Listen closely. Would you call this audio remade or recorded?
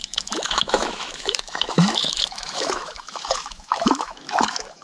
remade